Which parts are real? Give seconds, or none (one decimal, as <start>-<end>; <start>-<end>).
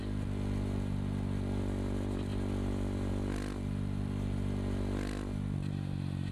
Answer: 0.0-6.3